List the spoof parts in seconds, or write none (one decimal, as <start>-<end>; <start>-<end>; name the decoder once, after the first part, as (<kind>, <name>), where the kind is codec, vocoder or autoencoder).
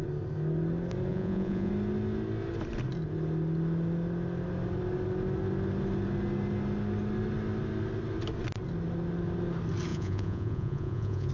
1.1-1.7 (vocoder, Vocos); 9.9-11.3